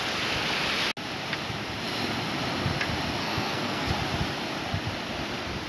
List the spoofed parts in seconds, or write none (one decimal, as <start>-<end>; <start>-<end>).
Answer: 3.2-3.9

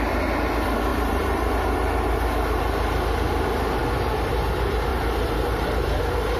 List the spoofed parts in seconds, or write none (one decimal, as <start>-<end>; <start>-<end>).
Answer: 0.9-1.5; 3.8-4.4; 4.9-6.0

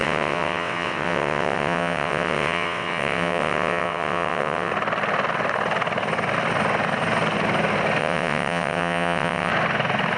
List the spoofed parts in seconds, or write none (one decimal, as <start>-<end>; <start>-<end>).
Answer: 0.0-4.7; 8.0-9.5